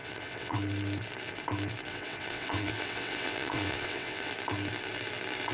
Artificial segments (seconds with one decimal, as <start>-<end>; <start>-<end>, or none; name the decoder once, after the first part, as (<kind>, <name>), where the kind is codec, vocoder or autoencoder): 0.0-0.6 (vocoder, WaveNeXt); 1.9-4.3